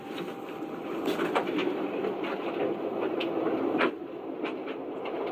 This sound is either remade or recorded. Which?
recorded